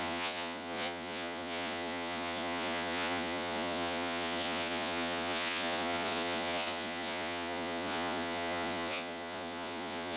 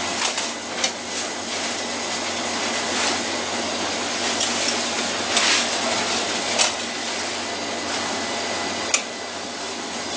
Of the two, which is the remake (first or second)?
first